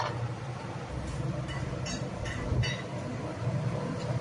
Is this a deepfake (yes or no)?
yes